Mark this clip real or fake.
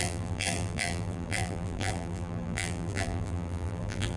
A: fake